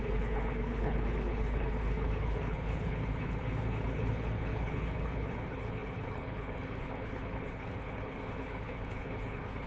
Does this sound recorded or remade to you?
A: remade